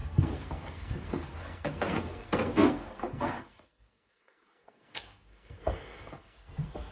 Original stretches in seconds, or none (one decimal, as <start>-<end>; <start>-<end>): none